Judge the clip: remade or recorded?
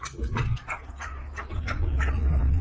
remade